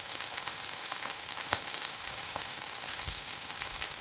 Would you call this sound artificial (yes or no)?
yes